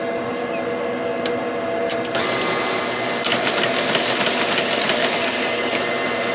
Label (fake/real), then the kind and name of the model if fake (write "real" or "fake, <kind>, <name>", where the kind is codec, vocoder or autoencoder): real